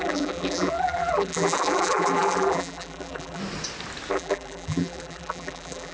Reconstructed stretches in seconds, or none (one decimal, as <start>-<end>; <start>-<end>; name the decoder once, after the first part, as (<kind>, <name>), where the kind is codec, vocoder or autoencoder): 0.0-3.4 (vocoder, BigVGAN v2); 4.1-5.9